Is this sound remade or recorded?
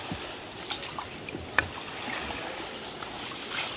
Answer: recorded